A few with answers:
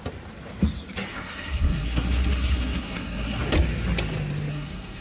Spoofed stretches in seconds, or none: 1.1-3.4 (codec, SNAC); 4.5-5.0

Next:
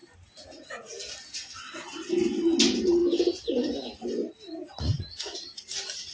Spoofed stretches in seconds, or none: none